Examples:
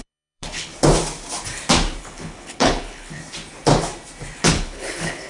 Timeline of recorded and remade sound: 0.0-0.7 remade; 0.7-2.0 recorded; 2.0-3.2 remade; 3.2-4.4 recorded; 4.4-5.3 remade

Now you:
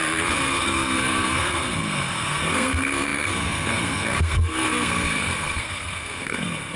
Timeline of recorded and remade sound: 0.0-6.8 remade